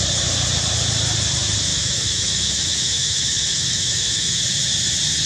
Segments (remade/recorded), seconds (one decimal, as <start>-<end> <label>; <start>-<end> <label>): 0.0-1.7 recorded; 1.7-4.4 remade; 4.4-5.3 recorded